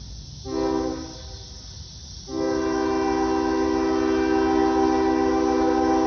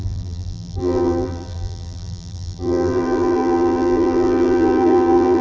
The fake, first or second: second